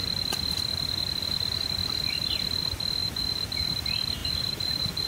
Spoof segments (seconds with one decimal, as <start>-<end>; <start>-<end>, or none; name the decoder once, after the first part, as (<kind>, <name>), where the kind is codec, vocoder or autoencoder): 3.0-3.8 (vocoder, BigVGAN v2); 4.2-5.1